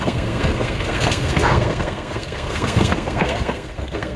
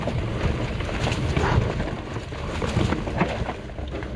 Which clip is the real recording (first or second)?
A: second